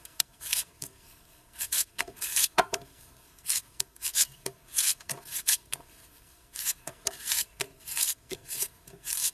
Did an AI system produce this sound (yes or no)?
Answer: yes